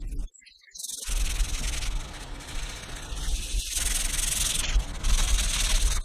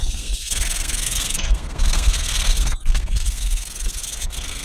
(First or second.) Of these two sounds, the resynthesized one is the second